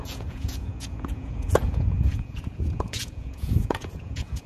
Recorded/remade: remade